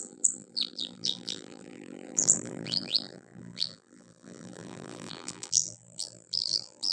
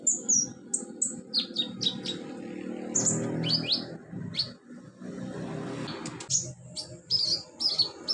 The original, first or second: second